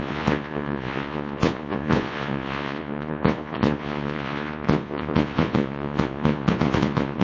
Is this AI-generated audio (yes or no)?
yes